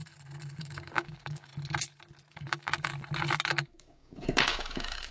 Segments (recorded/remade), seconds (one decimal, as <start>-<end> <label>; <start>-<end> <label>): 0.0-0.6 recorded; 0.6-1.5 remade; 1.5-2.3 recorded; 2.3-2.9 remade; 2.9-3.5 recorded; 3.5-5.1 remade